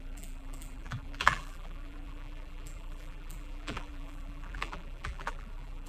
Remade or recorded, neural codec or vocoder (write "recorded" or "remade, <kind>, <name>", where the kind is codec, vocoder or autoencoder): remade, vocoder, BigVGAN v2